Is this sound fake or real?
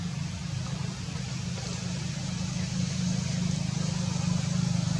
real